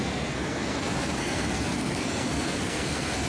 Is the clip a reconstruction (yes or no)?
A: yes